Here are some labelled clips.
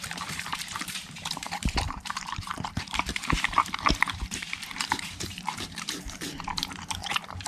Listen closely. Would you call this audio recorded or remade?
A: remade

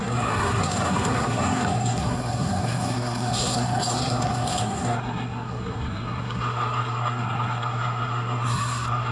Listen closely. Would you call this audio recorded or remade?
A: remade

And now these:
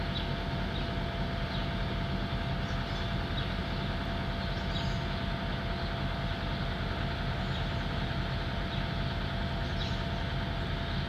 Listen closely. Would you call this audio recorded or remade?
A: recorded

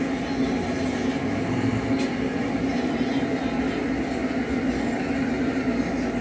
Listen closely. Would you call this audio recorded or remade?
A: recorded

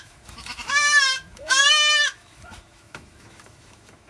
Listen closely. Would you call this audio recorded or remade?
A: remade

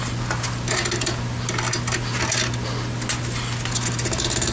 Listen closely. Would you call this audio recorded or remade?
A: recorded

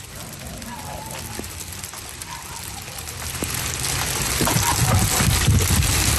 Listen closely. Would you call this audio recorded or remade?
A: recorded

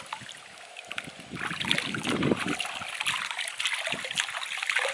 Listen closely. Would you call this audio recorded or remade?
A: recorded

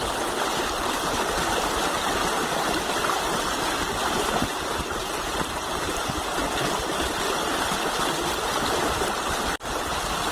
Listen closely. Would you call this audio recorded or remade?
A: recorded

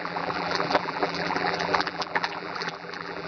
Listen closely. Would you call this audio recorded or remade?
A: remade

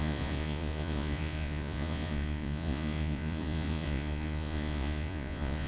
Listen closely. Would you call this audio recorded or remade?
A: remade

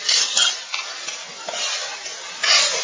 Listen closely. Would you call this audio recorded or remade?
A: recorded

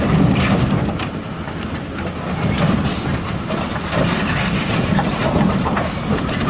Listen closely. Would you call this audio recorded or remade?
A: remade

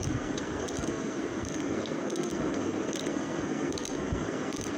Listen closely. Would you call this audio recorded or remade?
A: remade